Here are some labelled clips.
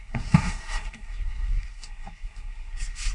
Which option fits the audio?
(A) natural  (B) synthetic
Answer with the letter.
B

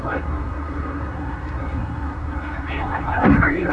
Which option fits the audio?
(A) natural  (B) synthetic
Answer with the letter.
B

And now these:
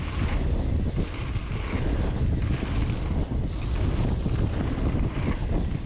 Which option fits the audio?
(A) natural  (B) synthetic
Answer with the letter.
A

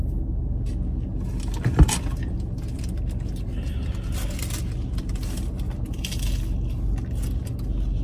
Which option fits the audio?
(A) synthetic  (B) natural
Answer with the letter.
B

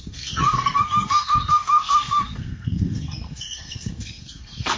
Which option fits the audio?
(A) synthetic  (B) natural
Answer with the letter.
A